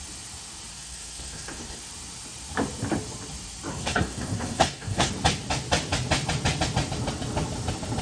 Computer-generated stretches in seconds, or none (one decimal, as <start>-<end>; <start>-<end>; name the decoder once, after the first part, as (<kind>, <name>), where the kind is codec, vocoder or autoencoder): 0.7-1.8 (codec, SNAC); 3.7-5.1